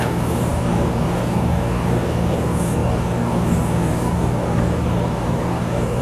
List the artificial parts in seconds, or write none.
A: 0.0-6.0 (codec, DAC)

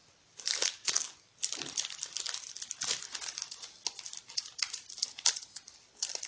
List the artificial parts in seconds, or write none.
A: none